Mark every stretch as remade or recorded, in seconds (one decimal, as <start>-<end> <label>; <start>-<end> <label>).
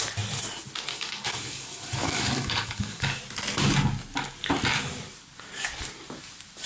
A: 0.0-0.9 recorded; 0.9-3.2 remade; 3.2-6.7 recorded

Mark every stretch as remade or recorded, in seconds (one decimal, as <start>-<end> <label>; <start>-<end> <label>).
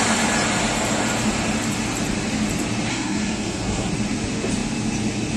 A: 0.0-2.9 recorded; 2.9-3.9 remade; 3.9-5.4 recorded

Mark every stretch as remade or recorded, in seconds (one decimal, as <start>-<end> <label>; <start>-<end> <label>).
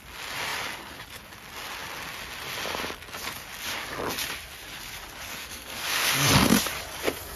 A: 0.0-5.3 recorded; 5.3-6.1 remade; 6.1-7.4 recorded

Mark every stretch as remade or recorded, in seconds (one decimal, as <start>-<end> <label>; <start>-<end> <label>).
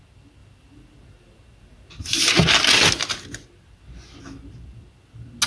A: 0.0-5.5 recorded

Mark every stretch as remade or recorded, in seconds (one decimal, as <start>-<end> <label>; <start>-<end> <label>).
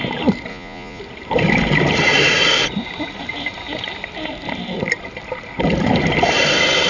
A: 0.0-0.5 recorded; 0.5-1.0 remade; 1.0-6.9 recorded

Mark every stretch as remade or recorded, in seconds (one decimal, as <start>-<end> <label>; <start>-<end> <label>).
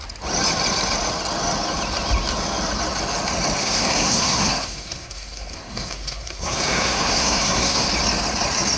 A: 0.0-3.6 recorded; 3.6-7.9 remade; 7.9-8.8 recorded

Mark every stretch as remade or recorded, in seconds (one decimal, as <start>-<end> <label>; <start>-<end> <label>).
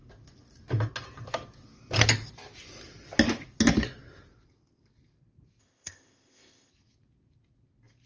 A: 0.0-5.6 recorded; 5.6-6.7 remade; 6.7-8.1 recorded